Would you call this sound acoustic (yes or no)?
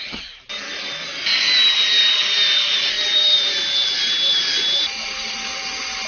yes